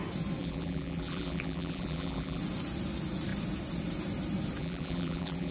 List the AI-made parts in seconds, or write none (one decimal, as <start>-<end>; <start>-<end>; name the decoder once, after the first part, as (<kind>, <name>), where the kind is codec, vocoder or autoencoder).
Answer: 0.4-2.4 (vocoder, BigVGAN v2); 4.6-5.5